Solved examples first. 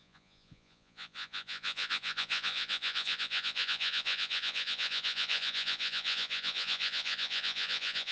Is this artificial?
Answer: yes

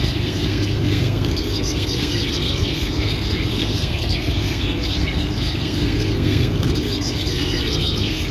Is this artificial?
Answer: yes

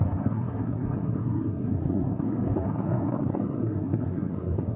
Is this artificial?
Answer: yes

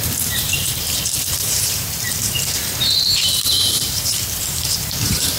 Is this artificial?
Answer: yes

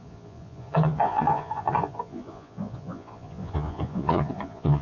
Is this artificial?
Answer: yes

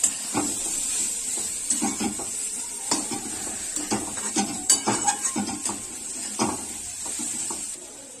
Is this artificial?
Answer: yes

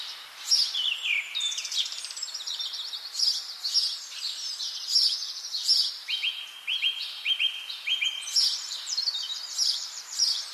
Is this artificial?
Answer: yes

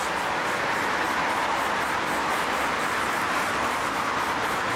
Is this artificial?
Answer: no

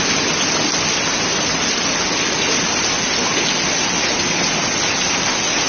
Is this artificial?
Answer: no